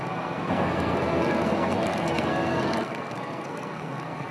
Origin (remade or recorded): remade